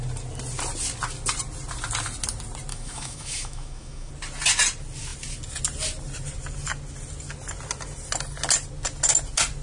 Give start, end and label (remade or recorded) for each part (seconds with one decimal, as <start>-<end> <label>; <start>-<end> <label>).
0.0-2.7 recorded; 2.7-4.1 remade; 4.1-9.6 recorded